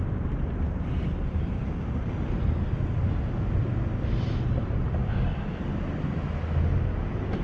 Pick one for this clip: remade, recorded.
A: recorded